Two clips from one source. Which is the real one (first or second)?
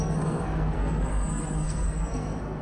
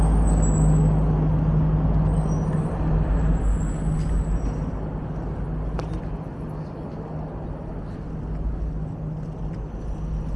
second